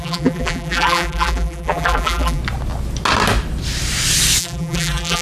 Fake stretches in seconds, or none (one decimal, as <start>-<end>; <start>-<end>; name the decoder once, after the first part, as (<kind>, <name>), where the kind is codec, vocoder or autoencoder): 0.0-2.4 (vocoder, BigVGAN v2); 4.4-5.2